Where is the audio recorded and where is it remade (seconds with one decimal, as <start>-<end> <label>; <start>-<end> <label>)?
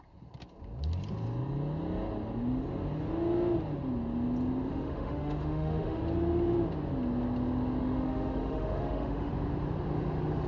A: 0.0-4.7 recorded; 4.7-6.0 remade; 6.0-7.8 recorded; 7.8-9.3 remade; 9.3-10.5 recorded